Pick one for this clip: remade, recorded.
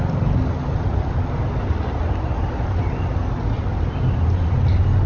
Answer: recorded